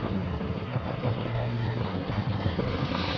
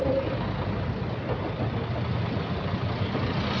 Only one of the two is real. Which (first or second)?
second